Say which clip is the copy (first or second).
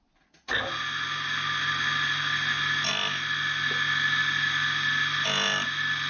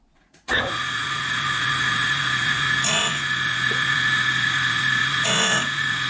second